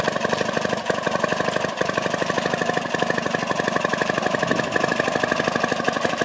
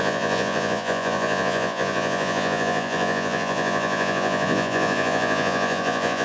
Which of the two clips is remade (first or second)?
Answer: second